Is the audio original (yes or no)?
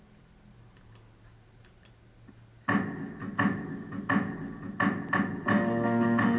yes